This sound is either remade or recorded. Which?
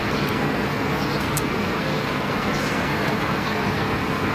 remade